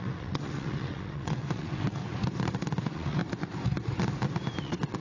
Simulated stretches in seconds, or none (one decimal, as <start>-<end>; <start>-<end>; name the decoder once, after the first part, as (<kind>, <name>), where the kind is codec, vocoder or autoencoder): 0.0-2.0 (vocoder, WaveNeXt); 2.8-3.2; 4.6-5.0